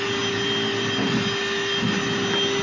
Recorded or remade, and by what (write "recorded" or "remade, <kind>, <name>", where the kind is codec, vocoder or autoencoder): recorded